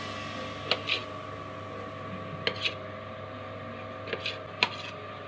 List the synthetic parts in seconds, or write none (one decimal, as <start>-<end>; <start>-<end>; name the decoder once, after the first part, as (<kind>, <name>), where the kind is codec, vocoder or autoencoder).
none